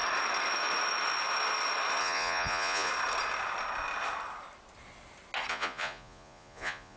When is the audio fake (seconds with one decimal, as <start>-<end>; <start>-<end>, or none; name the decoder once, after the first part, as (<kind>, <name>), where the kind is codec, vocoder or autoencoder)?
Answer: 2.0-2.9 (vocoder, Vocos); 5.5-7.0